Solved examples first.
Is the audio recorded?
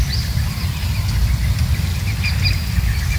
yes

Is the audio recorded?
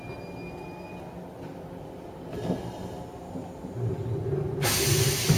yes